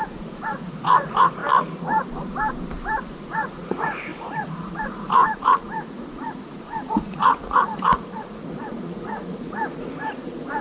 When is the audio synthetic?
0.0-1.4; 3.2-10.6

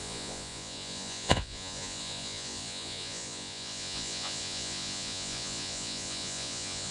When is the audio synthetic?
0.0-6.9